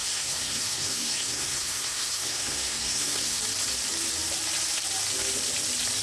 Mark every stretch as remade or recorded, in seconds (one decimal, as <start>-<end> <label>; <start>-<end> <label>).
0.0-3.4 remade; 3.4-6.0 recorded